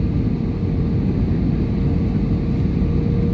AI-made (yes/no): no